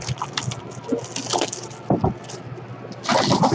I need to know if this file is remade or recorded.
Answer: recorded